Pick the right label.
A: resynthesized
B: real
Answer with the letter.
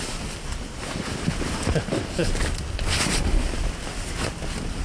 B